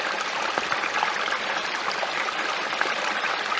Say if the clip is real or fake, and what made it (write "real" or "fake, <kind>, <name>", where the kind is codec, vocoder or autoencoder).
real